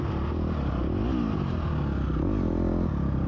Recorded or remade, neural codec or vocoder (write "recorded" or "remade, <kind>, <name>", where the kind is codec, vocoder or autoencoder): recorded